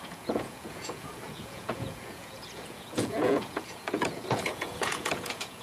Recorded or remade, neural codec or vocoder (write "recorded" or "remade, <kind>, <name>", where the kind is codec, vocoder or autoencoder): remade, vocoder, Vocos